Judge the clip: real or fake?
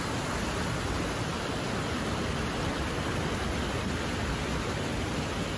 real